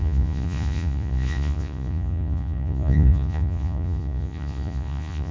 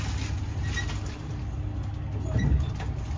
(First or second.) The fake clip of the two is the first